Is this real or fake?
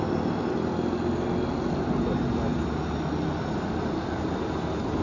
real